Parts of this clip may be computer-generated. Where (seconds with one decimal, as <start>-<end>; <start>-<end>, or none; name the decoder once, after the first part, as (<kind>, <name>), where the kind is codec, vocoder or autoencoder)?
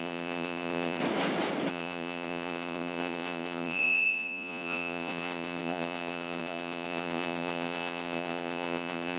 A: 0.0-1.0 (vocoder, Vocos); 1.7-9.2